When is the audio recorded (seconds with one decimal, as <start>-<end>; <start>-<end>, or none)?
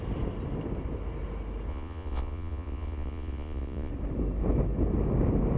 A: 0.0-1.7; 3.9-5.6